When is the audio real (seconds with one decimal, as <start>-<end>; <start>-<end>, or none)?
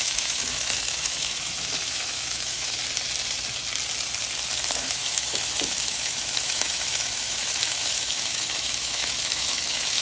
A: 2.8-4.6